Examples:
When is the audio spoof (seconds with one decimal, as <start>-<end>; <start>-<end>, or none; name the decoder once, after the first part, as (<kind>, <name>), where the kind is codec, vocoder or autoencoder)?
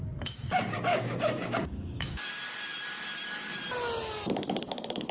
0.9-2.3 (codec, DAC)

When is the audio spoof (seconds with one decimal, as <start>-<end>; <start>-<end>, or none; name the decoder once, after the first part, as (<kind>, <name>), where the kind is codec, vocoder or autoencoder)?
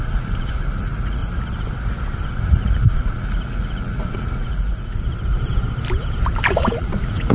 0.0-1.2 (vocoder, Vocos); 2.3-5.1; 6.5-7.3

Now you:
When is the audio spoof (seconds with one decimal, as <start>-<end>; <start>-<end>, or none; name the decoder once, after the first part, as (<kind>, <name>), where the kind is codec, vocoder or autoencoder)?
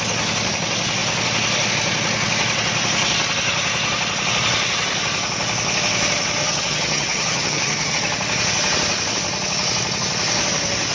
6.4-7.9 (vocoder, HiFi-GAN)